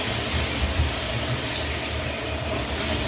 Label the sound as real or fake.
real